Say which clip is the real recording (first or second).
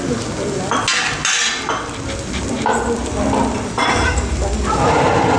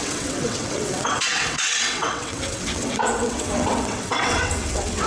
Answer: first